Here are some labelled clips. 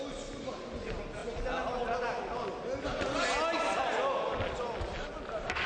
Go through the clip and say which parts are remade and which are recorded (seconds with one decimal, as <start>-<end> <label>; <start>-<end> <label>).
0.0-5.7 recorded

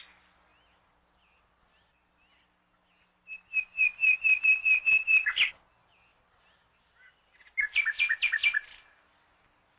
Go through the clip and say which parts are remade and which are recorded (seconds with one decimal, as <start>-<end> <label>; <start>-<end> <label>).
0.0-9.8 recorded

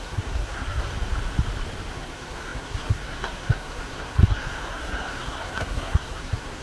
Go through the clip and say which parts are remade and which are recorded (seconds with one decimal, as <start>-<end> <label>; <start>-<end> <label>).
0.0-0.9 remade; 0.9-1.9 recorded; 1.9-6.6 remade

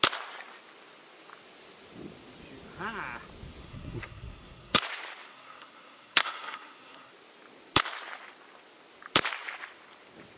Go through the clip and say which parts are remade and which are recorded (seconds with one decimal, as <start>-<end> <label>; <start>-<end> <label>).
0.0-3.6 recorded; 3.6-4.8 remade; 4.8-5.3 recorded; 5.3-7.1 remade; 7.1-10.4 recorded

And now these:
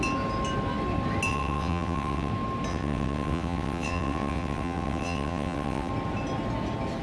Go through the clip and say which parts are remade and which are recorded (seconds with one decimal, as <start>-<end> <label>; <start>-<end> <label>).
0.0-1.3 recorded; 1.3-2.3 remade; 2.3-2.7 recorded; 2.7-5.9 remade; 5.9-7.0 recorded

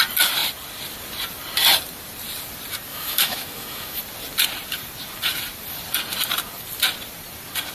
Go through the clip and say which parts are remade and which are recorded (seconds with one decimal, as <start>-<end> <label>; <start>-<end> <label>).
0.0-2.9 recorded; 2.9-4.0 remade; 4.0-7.7 recorded

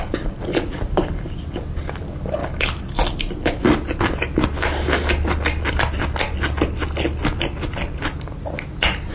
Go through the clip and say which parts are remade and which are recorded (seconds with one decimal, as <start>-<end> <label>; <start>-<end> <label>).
0.0-9.1 recorded

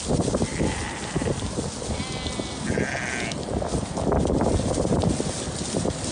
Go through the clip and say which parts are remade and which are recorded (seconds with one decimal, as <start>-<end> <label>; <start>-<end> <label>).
0.0-6.1 recorded